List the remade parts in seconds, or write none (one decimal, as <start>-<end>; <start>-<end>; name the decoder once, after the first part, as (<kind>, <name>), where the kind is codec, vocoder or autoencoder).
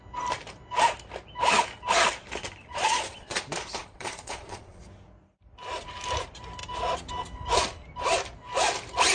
2.6-3.4 (vocoder, Vocos); 3.8-4.8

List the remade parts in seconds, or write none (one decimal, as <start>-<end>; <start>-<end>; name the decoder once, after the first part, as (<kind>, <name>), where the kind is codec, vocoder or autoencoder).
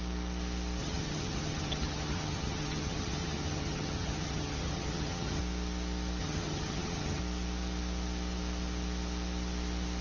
0.8-5.4 (vocoder, HiFi-GAN); 6.2-7.2